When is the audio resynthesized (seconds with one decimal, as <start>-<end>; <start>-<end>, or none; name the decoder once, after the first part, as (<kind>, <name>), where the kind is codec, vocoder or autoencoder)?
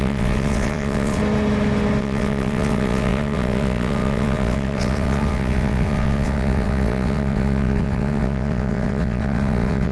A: 0.0-1.2 (vocoder, WaveNeXt); 2.0-9.9